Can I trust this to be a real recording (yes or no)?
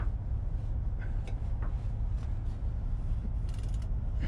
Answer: yes